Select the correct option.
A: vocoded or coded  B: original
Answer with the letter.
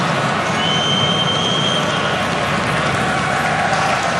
B